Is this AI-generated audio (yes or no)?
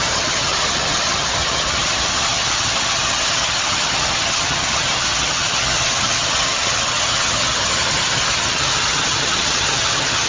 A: yes